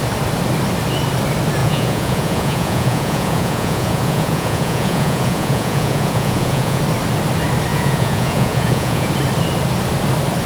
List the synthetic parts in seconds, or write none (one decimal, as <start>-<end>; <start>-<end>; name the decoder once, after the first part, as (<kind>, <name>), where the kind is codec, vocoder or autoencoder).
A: 1.6-6.8 (vocoder, Vocos); 7.7-9.1